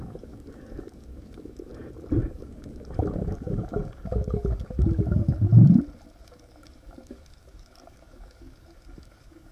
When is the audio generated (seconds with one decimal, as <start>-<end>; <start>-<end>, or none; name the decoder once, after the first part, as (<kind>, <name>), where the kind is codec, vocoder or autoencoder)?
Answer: 0.0-1.7 (codec, DAC); 2.2-5.5; 6.2-9.5